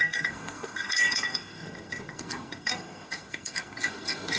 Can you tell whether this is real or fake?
fake